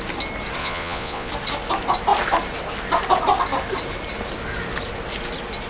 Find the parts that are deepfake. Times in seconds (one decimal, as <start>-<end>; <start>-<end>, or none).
0.6-1.3